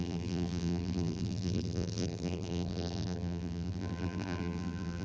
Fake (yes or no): yes